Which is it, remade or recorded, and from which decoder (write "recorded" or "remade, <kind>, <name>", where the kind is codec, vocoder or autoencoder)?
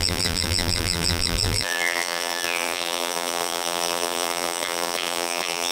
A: remade, vocoder, BigVGAN v2